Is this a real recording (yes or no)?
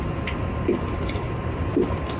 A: yes